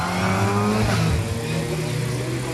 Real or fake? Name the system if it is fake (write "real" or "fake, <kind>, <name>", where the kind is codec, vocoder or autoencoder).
real